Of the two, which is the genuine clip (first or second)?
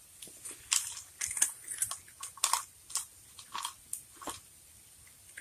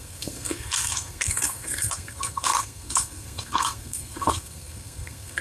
first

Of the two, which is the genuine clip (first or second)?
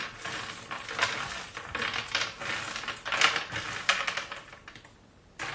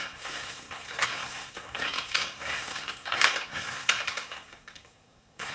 first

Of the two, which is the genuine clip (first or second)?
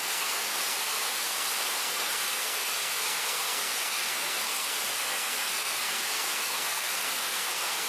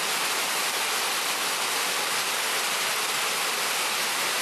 second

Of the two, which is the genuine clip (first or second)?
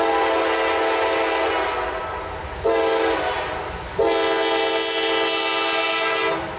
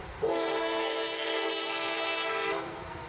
first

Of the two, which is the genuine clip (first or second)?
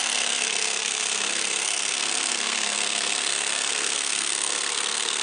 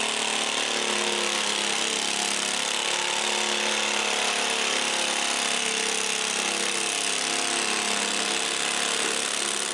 second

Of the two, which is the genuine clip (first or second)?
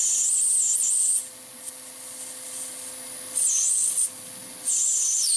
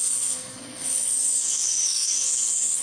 first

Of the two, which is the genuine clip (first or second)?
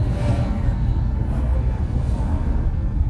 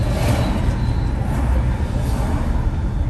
second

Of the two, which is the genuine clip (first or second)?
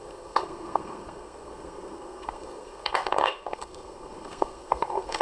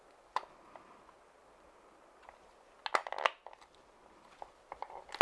second